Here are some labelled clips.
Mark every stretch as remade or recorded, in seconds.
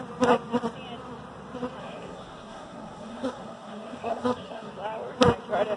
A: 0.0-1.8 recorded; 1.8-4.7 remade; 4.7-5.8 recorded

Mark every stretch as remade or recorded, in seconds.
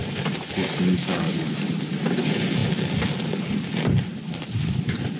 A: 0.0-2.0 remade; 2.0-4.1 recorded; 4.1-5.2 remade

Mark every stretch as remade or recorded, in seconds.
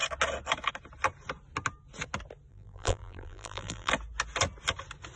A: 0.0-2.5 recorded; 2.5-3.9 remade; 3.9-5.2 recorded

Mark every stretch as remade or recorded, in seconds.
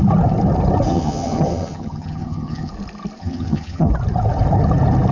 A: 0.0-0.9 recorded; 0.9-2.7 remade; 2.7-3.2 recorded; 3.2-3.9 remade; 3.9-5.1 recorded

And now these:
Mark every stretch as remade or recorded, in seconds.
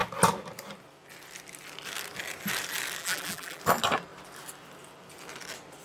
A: 0.0-3.0 recorded; 3.0-3.6 remade; 3.6-5.8 recorded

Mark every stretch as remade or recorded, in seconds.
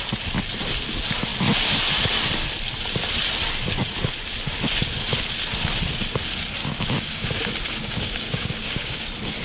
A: 0.0-6.6 recorded; 6.6-7.3 remade; 7.3-7.8 recorded; 7.8-9.0 remade; 9.0-9.4 recorded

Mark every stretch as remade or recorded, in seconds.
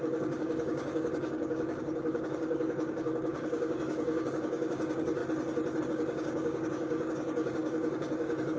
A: 0.0-5.2 remade; 5.2-5.8 recorded; 5.8-8.6 remade